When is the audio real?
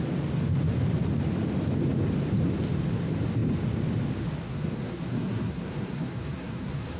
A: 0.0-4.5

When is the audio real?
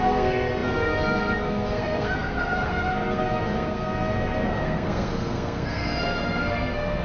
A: none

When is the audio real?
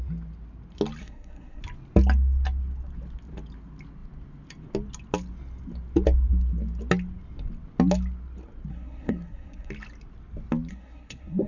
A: 0.0-1.0; 1.6-8.7; 9.7-10.7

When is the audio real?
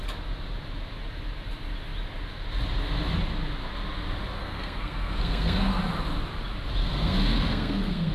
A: 0.0-4.4; 5.8-6.8